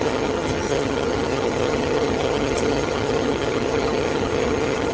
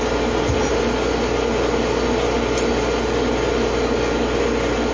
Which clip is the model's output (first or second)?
first